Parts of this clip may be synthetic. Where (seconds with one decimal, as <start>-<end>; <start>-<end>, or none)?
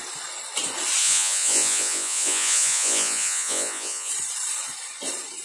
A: 1.0-4.1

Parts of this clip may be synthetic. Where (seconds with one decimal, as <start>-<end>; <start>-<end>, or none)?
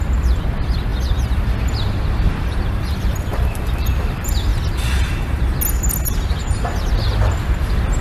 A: 0.0-4.5; 6.5-8.0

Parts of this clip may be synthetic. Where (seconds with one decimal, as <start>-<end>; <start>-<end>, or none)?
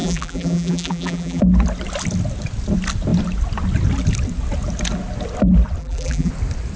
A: 0.0-1.4; 5.8-6.3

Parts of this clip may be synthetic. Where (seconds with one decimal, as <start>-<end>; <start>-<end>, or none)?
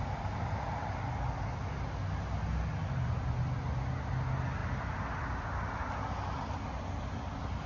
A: none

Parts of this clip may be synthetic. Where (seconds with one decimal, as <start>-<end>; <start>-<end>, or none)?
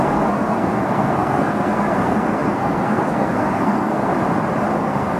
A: 0.0-4.1; 4.7-5.2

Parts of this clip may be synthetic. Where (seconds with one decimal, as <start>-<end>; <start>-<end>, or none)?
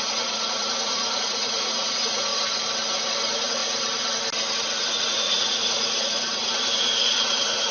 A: 0.0-2.3; 3.2-3.6; 4.8-7.7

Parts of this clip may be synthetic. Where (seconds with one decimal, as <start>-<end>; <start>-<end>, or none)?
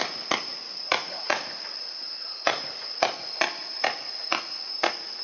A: 0.5-3.3; 4.2-4.7